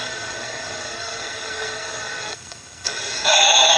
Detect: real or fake fake